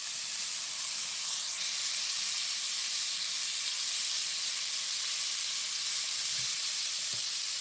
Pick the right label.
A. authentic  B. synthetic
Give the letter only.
B